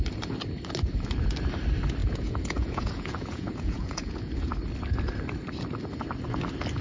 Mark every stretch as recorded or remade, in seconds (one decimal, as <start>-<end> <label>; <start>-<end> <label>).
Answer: 0.0-2.0 recorded; 2.0-4.3 remade; 4.3-6.8 recorded